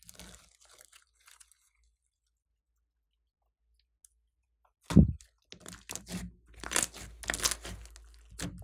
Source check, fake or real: real